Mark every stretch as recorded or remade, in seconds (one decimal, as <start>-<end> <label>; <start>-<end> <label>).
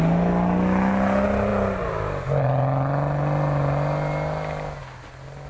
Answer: 0.0-5.5 recorded